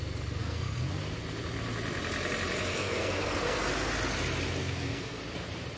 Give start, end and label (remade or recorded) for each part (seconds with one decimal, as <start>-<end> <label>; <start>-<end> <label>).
0.0-0.4 recorded; 0.4-0.9 remade; 0.9-2.7 recorded; 2.7-3.6 remade; 3.6-4.6 recorded; 4.6-5.2 remade; 5.2-5.8 recorded